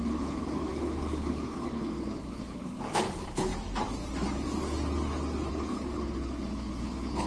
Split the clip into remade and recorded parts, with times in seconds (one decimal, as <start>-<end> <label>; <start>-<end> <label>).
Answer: 0.0-3.5 remade; 3.5-5.5 recorded; 5.5-7.3 remade